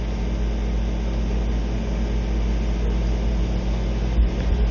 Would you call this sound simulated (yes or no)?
no